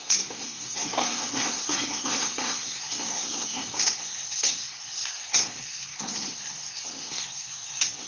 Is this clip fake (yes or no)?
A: yes